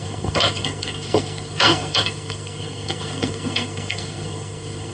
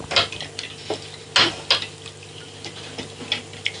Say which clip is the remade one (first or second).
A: first